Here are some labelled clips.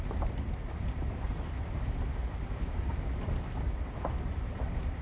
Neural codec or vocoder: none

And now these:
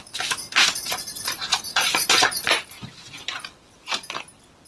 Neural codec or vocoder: none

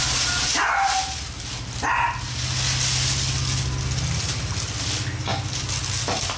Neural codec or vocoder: none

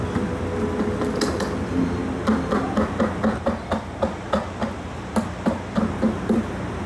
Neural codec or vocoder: none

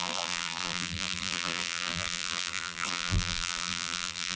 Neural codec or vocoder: vocoder, BigVGAN v2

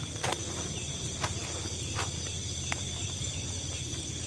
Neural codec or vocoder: none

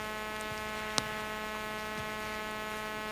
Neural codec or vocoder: none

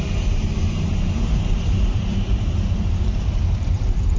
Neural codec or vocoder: vocoder, BigVGAN v2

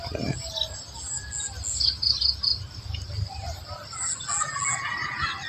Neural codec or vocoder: none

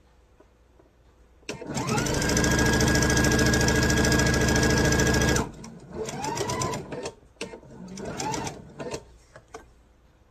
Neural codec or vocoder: none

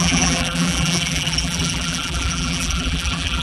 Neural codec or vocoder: vocoder, BigVGAN v2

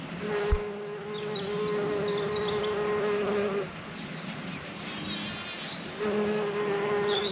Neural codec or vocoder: none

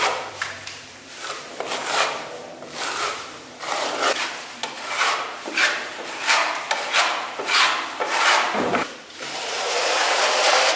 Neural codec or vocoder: vocoder, BigVGAN v2